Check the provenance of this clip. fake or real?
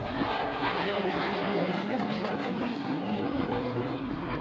fake